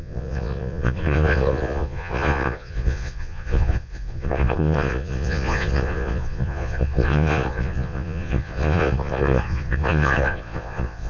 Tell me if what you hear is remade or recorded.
remade